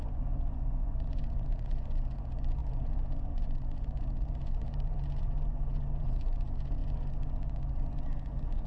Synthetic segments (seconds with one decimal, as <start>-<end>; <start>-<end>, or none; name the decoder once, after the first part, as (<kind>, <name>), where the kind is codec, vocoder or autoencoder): 0.0-8.7 (vocoder, Vocos)